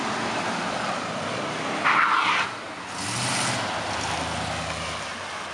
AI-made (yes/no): no